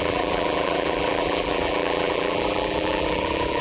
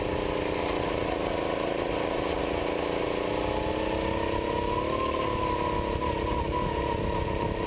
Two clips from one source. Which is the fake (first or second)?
first